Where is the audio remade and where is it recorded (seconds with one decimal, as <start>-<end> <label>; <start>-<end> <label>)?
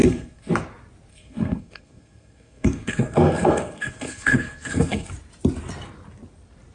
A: 0.0-0.5 remade; 0.5-1.1 recorded; 1.1-5.1 remade; 5.1-6.7 recorded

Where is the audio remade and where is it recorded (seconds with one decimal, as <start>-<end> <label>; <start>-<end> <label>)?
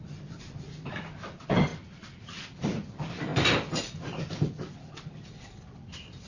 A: 0.0-6.3 recorded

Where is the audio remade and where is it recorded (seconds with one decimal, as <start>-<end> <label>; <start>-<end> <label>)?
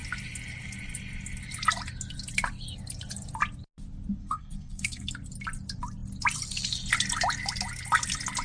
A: 0.0-4.2 recorded; 4.2-5.1 remade; 5.1-8.4 recorded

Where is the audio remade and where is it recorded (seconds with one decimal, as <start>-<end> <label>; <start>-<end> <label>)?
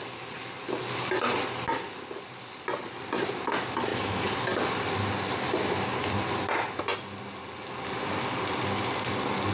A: 0.0-9.5 recorded